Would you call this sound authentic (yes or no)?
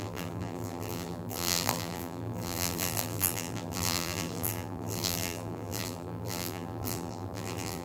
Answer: no